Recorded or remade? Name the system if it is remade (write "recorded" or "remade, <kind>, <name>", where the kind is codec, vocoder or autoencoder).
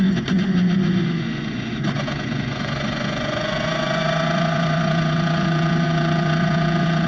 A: remade, vocoder, Vocos